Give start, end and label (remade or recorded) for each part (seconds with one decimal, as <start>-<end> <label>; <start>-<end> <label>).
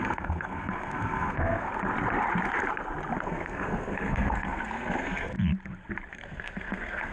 0.0-1.7 remade; 1.7-3.2 recorded; 3.2-5.3 remade; 5.3-6.1 recorded; 6.1-7.1 remade